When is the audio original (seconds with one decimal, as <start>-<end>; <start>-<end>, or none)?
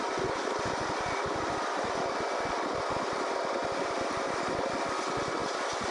0.0-5.9